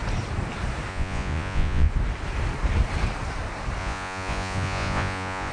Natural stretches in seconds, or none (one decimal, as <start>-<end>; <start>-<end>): 0.0-0.9; 1.9-3.8